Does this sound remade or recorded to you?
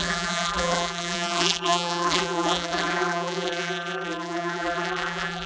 remade